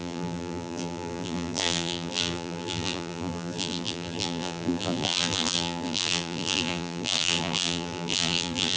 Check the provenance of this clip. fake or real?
fake